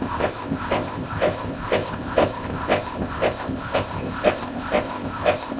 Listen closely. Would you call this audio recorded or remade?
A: remade